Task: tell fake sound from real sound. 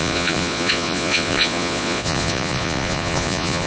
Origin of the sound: fake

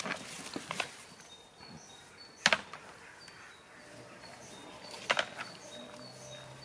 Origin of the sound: real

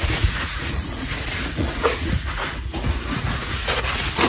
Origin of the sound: fake